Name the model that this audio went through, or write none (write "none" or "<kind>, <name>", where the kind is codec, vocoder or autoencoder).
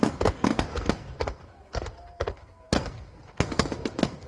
codec, SNAC